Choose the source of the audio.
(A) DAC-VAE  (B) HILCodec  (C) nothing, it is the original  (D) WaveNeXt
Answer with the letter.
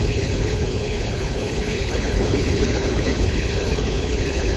B